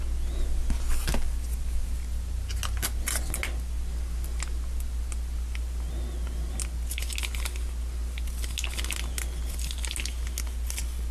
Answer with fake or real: real